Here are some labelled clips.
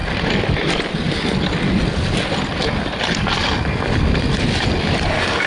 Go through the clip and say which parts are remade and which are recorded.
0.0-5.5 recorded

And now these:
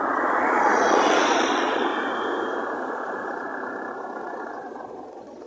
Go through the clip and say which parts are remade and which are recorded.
0.0-1.9 remade; 1.9-2.9 recorded; 2.9-3.5 remade; 3.5-4.2 recorded; 4.2-5.5 remade